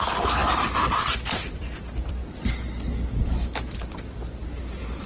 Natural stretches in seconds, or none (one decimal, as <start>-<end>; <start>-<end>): 2.2-5.1